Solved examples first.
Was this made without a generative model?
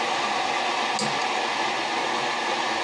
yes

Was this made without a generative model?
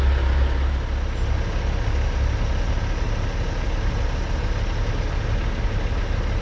yes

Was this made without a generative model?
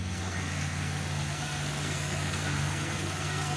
no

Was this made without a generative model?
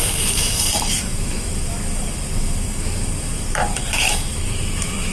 no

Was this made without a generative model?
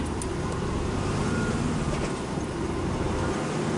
yes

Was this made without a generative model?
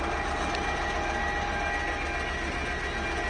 yes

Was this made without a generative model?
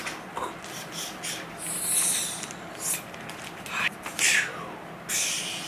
yes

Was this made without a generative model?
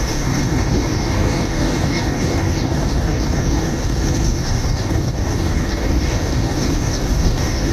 no